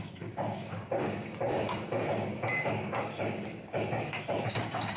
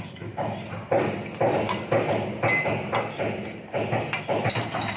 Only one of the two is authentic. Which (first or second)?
second